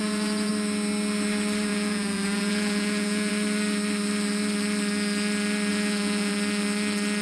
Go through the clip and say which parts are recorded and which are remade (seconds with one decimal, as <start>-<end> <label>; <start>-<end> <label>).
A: 0.0-0.5 remade; 0.5-1.7 recorded; 1.7-3.3 remade; 3.3-5.7 recorded; 5.7-6.3 remade; 6.3-7.2 recorded